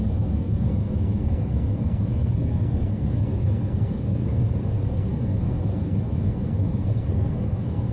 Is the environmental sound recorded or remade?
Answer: remade